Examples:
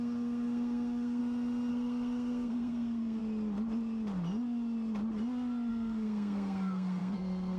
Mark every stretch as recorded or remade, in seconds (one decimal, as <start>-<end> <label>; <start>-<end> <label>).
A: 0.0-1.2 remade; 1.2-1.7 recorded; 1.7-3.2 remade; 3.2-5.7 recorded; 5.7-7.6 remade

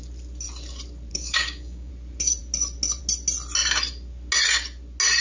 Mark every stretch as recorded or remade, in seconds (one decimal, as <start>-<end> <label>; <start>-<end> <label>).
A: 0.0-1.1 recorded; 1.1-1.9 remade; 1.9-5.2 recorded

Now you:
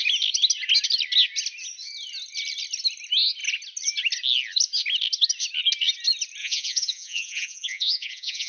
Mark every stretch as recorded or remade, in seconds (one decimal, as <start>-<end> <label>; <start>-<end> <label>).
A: 0.0-6.4 recorded; 6.4-8.5 remade

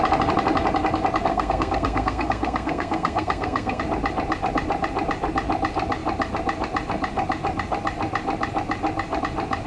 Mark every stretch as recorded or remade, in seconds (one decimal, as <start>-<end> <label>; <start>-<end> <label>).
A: 0.0-1.3 recorded; 1.3-3.8 remade; 3.8-9.7 recorded